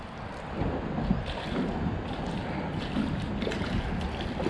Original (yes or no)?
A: yes